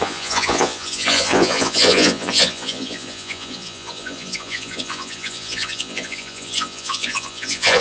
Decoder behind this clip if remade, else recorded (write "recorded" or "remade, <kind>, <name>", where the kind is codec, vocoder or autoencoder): remade, vocoder, Vocos